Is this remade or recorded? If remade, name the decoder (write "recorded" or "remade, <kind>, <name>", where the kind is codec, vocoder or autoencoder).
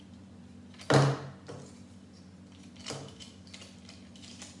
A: recorded